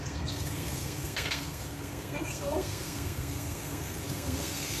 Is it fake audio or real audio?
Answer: fake